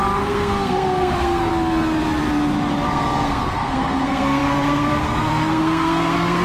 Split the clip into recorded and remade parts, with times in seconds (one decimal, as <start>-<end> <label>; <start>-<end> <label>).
0.0-1.5 remade; 1.5-2.9 recorded; 2.9-6.4 remade